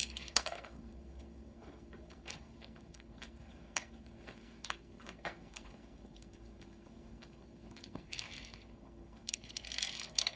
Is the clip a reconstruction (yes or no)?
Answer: yes